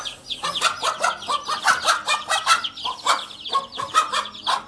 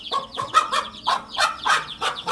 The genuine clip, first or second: first